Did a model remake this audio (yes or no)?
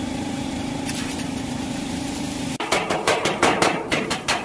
yes